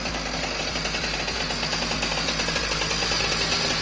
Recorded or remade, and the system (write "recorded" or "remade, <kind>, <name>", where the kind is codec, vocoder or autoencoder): recorded